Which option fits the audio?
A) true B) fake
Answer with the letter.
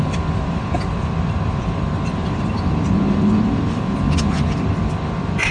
B